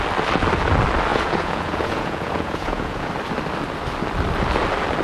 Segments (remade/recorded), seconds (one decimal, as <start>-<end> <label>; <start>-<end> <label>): 0.0-1.1 recorded; 1.1-3.1 remade; 3.1-5.0 recorded